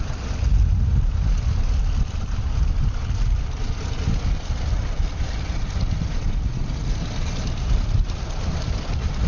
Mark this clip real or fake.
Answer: real